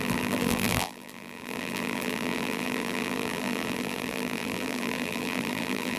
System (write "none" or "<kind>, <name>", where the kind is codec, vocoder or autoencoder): vocoder, BigVGAN v2